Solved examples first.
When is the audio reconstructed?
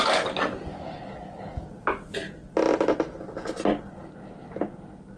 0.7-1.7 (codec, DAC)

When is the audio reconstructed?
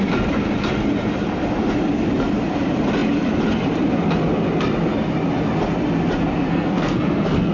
6.5-7.5 (codec, SNAC)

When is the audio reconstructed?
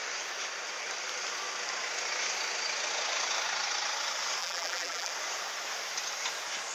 4.4-5.1 (vocoder, BigVGAN v2)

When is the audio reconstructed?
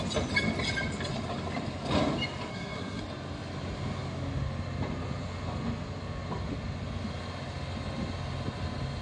2.5-3.0 (codec, SNAC)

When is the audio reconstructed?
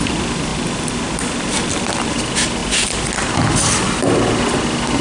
none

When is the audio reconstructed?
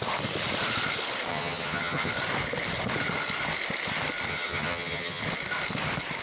1.3-2.1 (vocoder, HiFi-GAN); 4.3-5.2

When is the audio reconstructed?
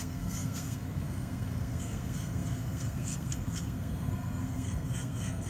0.0-5.5 (codec, SNAC)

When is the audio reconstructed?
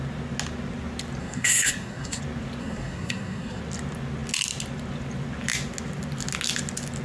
1.2-2.2 (codec, SNAC); 2.6-3.6